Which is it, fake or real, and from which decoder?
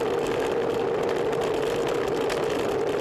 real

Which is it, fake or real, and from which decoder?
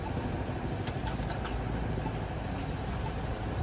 real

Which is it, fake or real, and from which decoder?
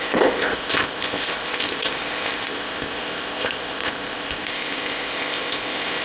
fake, codec, ZipCodec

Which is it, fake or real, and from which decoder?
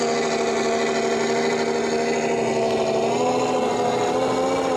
real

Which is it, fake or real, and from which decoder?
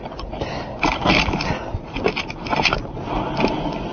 real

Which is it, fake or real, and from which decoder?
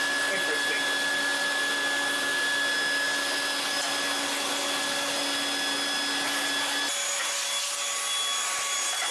real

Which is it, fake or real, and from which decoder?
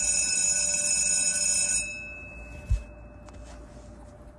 real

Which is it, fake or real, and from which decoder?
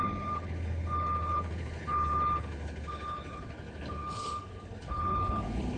fake, codec, HILCodec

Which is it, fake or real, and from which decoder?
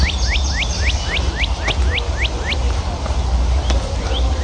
real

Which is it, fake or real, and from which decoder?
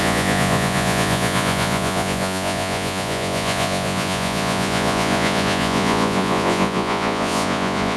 fake, vocoder, Vocos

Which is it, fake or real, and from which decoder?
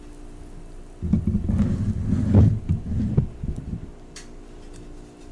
real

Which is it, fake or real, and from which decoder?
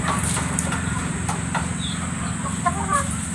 real